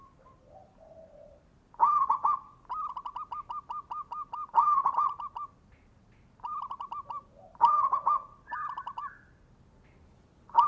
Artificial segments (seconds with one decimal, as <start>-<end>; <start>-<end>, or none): none